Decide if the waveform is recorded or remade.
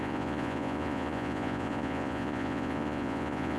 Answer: remade